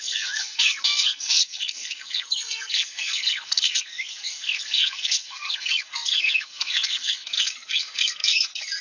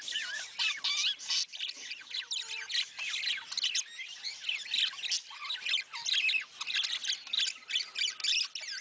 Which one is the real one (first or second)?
second